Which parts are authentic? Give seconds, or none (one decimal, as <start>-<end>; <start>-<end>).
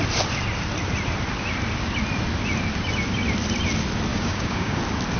0.0-4.1; 4.8-5.2